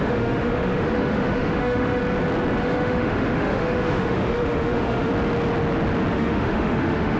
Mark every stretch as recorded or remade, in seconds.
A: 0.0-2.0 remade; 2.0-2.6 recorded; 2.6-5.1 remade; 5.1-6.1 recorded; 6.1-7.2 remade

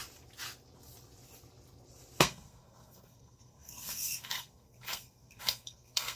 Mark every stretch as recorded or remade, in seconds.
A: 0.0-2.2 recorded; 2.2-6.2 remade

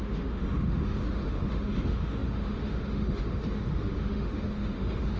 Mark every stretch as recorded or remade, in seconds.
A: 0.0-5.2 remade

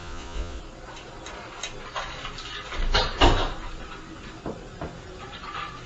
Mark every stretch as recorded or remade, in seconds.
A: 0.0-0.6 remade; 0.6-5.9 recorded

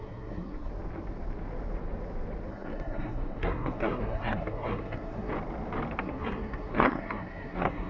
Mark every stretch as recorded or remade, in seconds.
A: 0.0-0.7 remade; 0.7-2.5 recorded; 2.5-5.3 remade; 5.3-6.0 recorded; 6.0-7.9 remade

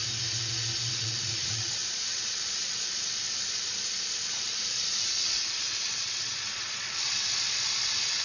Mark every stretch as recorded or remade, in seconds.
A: 0.0-0.9 recorded; 0.9-8.2 remade

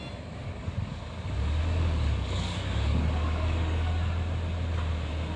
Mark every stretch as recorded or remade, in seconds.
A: 0.0-0.4 recorded; 0.4-1.0 remade; 1.0-1.6 recorded; 1.6-3.9 remade; 3.9-5.4 recorded

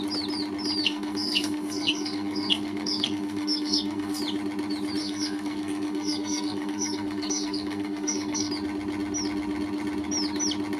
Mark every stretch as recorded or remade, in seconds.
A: 0.0-0.8 recorded; 0.8-4.2 remade; 4.2-5.0 recorded; 5.0-8.5 remade; 8.5-10.8 recorded